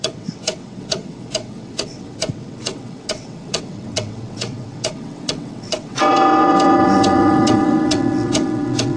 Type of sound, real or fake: fake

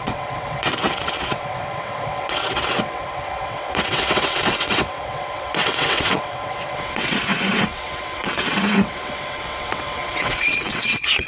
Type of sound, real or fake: fake